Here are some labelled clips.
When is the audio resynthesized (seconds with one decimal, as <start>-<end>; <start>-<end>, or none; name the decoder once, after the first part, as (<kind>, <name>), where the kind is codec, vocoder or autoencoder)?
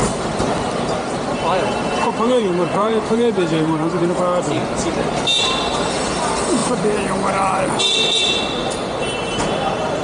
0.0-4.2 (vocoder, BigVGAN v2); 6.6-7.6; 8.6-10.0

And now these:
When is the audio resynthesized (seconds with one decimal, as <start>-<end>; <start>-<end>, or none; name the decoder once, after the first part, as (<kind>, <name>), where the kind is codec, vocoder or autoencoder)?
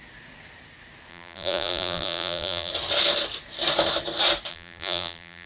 1.1-2.7 (vocoder, BigVGAN v2); 4.5-5.5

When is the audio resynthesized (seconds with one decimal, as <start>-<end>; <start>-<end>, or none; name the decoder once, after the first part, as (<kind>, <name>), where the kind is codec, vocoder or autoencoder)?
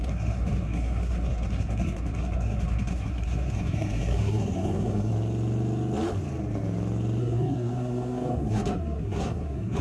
0.0-5.1 (codec, SNAC); 7.2-9.8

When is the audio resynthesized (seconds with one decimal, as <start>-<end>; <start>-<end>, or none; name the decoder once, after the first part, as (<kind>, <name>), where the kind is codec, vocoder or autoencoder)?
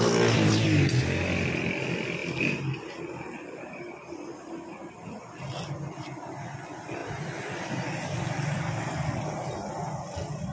none